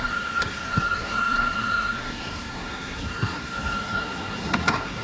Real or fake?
fake